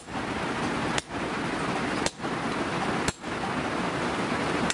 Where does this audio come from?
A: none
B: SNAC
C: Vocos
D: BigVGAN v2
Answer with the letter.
A